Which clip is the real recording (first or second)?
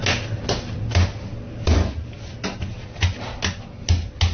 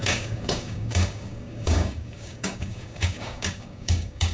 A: first